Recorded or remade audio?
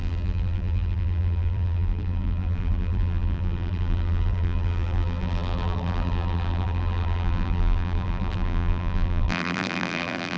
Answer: remade